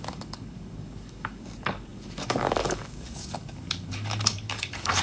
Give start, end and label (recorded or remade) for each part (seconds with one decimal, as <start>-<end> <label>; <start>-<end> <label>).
0.0-5.0 remade